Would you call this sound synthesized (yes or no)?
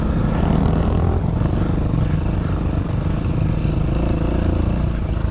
no